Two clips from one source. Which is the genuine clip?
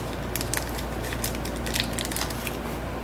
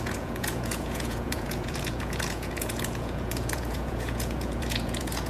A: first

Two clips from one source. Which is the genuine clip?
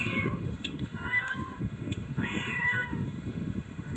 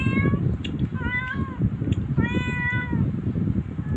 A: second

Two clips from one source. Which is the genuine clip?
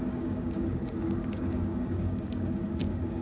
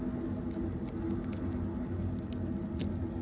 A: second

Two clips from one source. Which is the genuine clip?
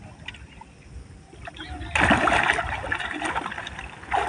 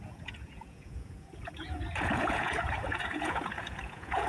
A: first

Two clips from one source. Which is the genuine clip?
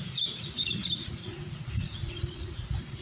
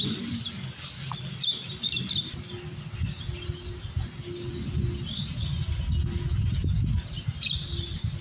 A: second